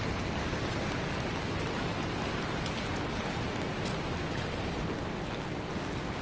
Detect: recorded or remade recorded